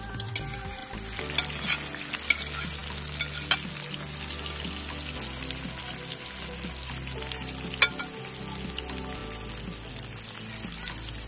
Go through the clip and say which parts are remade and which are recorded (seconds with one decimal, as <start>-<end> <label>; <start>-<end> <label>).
0.0-11.3 recorded